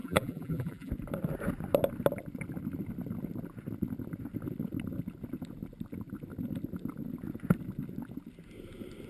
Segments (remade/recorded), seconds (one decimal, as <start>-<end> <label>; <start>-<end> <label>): 0.0-0.9 remade; 0.9-9.1 recorded